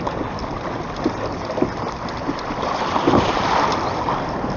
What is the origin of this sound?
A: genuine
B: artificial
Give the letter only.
A